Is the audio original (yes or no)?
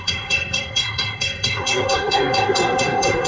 no